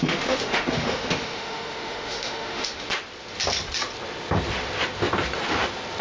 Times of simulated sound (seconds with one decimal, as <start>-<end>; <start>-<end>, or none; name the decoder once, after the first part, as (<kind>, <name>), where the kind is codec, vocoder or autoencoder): 0.0-2.9 (autoencoder, DAC-VAE)